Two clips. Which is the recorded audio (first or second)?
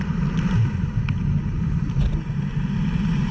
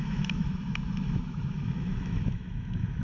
first